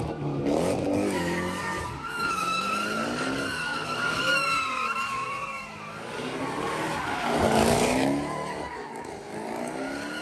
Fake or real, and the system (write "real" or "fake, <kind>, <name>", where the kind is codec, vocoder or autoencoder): fake, codec, DAC